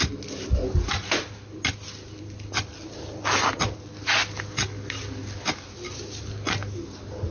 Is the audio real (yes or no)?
yes